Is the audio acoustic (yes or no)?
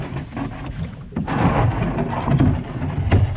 yes